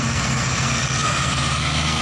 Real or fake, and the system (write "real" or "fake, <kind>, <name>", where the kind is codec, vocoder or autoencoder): fake, codec, SNAC